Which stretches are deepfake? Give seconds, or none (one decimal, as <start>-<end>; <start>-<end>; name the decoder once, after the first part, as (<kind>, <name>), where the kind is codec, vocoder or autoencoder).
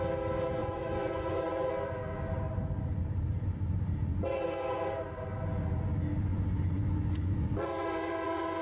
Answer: 0.6-1.7 (vocoder, Vocos); 4.1-4.9; 6.3-8.6